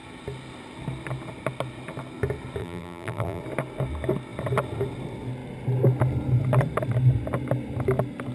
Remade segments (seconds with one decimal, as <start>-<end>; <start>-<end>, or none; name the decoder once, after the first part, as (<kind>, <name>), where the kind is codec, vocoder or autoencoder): 2.6-3.4 (vocoder, BigVGAN v2)